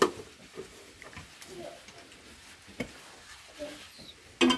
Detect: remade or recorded recorded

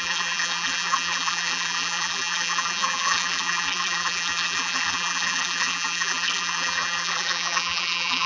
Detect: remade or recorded remade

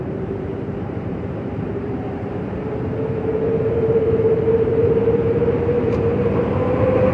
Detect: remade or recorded remade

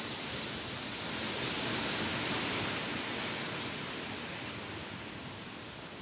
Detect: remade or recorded recorded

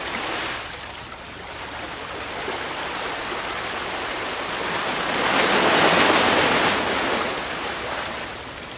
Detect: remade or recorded remade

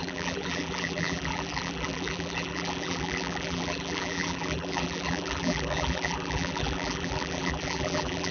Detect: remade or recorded remade